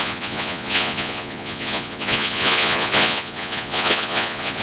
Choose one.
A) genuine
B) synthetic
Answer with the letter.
B